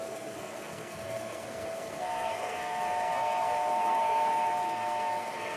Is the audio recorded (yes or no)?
no